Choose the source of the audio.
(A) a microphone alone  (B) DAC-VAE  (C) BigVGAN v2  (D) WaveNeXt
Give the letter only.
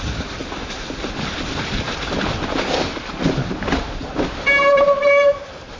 C